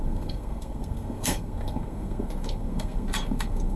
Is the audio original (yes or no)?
no